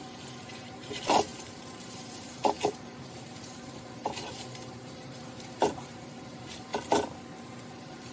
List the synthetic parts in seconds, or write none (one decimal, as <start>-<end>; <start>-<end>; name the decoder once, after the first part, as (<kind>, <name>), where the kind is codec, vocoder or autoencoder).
0.0-6.7 (vocoder, BigVGAN v2); 7.6-8.1